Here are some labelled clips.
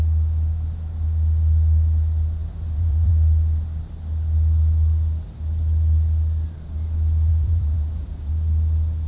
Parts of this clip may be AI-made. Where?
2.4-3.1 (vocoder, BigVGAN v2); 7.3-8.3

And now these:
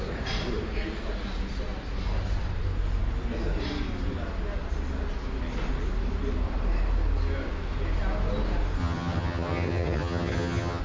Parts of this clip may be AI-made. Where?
8.8-10.8 (vocoder, HiFi-GAN)

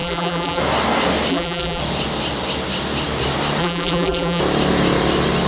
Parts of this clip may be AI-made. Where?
0.0-0.6 (vocoder, BigVGAN v2); 1.3-1.8; 3.6-4.4

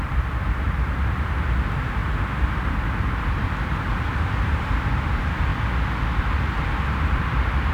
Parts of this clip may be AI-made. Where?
0.0-2.0 (vocoder, BigVGAN v2); 2.9-5.5; 6.2-7.7

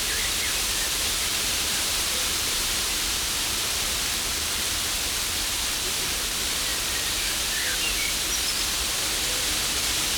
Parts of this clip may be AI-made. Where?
1.3-2.8 (vocoder, BigVGAN v2)

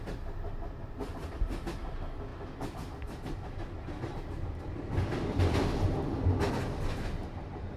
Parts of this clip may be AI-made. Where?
none